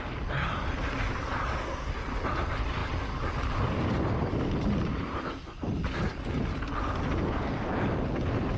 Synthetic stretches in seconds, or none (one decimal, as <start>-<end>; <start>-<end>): 2.8-7.4